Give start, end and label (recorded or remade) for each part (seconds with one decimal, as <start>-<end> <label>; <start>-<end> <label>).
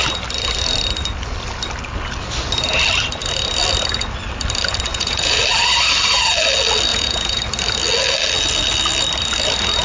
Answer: 0.0-4.9 recorded; 4.9-5.4 remade; 5.4-6.9 recorded; 6.9-7.4 remade; 7.4-9.8 recorded